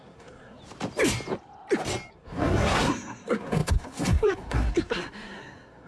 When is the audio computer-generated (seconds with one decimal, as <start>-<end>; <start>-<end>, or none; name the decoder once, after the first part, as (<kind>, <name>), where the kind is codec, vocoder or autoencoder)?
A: 0.0-0.6 (codec, SNAC); 2.1-5.9